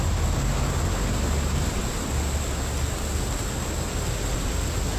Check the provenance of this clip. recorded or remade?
recorded